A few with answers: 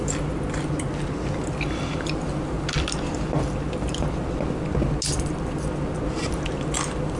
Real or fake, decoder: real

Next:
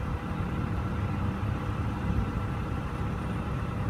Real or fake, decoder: fake, vocoder, BigVGAN v2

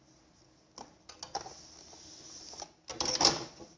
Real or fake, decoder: real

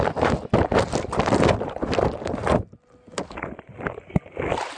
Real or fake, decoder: real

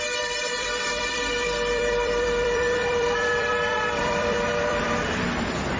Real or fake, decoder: fake, vocoder, BigVGAN v2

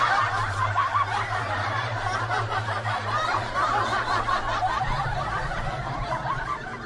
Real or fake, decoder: fake, vocoder, BigVGAN v2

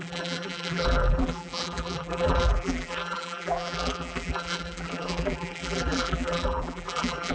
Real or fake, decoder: fake, vocoder, BigVGAN v2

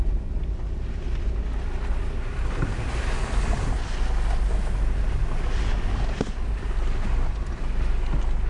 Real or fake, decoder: real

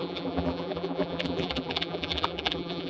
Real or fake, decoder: fake, vocoder, BigVGAN v2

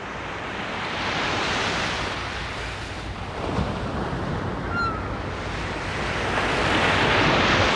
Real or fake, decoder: real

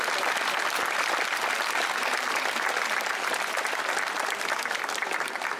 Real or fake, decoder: real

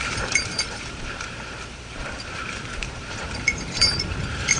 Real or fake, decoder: fake, vocoder, BigVGAN v2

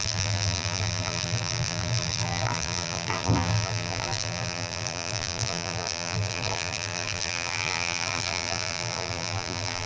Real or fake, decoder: fake, vocoder, BigVGAN v2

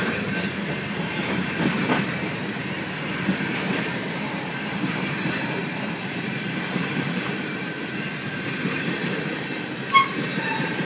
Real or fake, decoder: fake, vocoder, BigVGAN v2